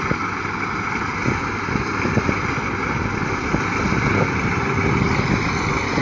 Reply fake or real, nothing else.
real